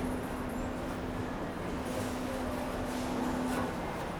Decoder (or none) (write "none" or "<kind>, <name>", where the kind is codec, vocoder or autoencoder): none